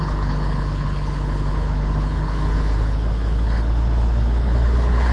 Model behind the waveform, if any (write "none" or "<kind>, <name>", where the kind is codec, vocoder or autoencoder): codec, HILCodec